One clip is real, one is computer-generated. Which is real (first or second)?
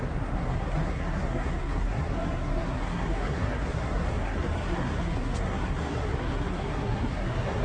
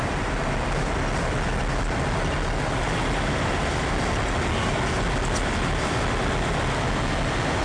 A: second